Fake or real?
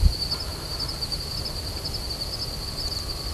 real